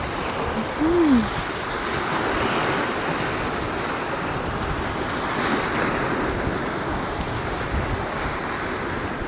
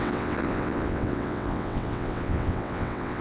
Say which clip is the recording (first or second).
first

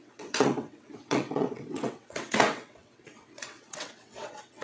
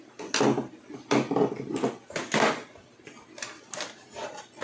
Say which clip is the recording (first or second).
second